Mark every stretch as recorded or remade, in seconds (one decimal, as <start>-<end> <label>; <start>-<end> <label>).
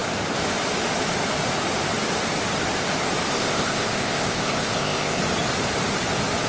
0.0-3.3 recorded; 3.3-5.2 remade; 5.2-6.5 recorded